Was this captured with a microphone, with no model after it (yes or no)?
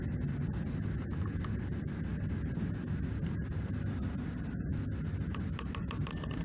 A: yes